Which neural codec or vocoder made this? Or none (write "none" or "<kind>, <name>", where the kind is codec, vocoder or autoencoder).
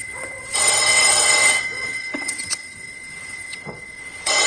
vocoder, WaveNeXt